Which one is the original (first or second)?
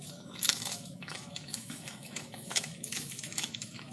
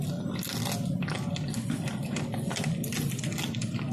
second